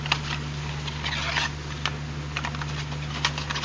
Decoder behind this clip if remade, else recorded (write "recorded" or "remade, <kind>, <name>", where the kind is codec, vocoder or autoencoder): recorded